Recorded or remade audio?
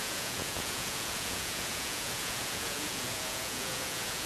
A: remade